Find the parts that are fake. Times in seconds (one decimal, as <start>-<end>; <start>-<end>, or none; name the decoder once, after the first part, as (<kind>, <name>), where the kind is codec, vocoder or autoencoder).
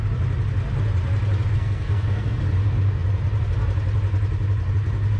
1.5-2.4 (codec, SNAC)